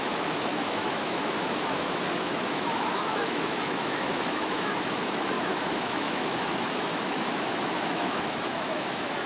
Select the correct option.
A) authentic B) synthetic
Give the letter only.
B